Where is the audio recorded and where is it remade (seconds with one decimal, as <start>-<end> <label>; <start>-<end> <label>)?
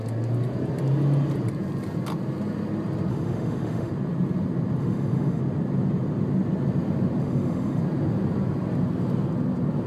0.0-3.1 recorded; 3.1-3.9 remade; 3.9-4.8 recorded; 4.8-5.4 remade; 5.4-7.2 recorded; 7.2-7.8 remade; 7.8-9.9 recorded